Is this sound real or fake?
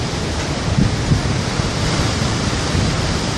real